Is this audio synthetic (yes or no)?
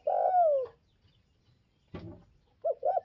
no